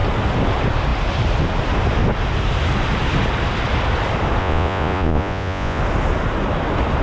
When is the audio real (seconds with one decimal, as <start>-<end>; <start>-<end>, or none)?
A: 0.0-4.4; 5.8-7.0